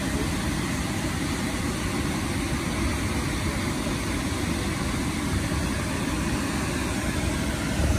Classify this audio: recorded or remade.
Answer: recorded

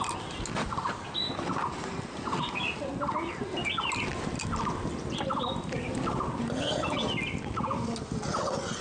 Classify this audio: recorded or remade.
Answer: recorded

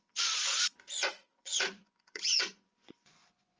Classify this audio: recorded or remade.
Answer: remade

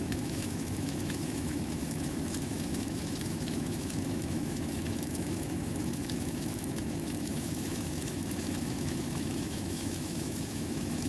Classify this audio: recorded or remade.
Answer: remade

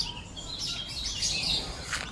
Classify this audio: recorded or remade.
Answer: recorded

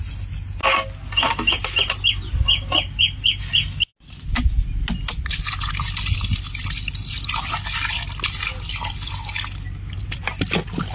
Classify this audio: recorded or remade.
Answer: recorded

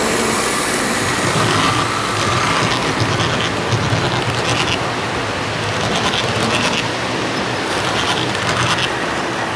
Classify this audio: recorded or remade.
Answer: recorded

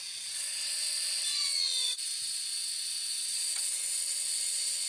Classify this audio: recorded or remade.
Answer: remade